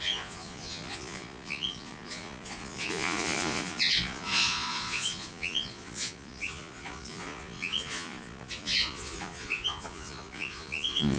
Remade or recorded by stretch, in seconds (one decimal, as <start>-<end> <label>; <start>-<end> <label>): 0.0-11.2 remade